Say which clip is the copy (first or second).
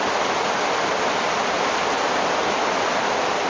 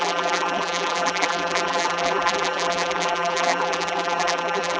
second